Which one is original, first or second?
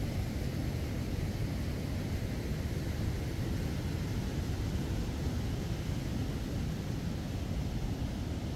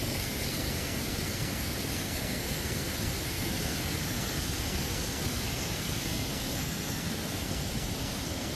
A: first